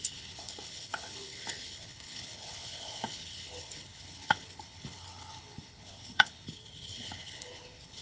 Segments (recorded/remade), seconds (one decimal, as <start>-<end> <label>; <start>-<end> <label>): 0.0-8.0 remade